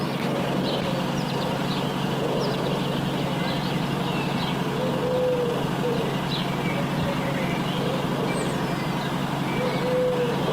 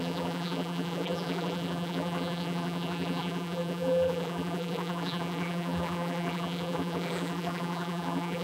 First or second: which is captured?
first